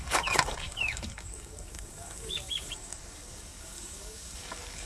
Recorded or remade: remade